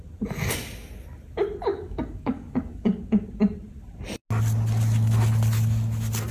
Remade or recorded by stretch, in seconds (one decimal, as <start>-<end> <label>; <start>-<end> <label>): 0.0-1.7 recorded; 1.7-3.0 remade; 3.0-6.3 recorded